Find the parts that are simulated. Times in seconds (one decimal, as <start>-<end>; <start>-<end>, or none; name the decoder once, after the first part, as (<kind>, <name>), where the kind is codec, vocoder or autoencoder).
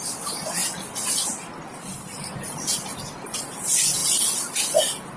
none